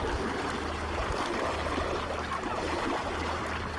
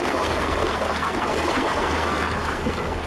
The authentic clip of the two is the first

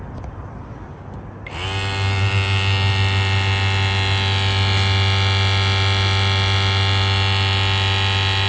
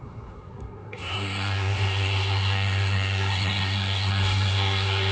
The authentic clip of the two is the first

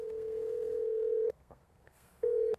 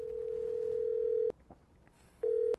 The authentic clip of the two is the second